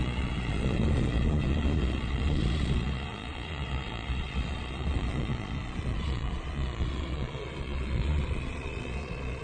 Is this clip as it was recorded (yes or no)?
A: no